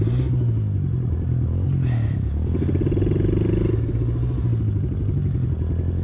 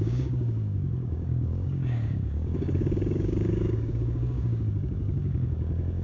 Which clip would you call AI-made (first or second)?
second